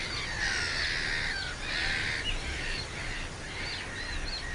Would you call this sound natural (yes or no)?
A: yes